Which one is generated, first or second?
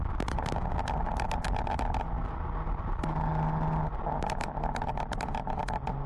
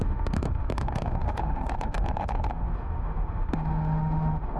second